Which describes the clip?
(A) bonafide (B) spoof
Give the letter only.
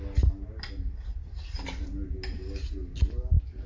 A